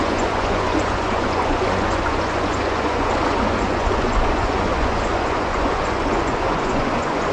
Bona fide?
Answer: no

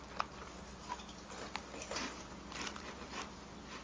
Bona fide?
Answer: yes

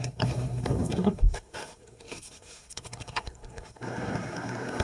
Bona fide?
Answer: no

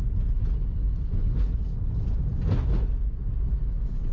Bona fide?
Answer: yes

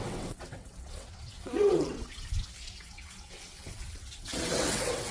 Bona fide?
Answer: no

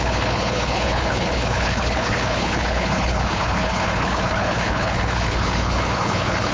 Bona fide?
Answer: no